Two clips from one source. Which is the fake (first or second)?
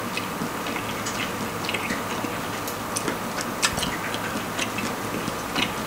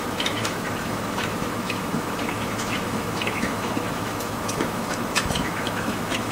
second